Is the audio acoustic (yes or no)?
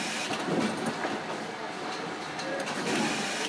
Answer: yes